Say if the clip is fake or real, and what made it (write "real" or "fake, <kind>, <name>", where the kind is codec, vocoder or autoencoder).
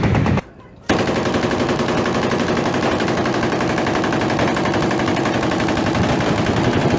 real